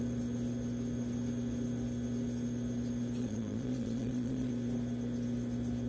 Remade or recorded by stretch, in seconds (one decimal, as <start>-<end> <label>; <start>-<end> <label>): 0.0-3.2 recorded; 3.2-4.5 remade; 4.5-5.9 recorded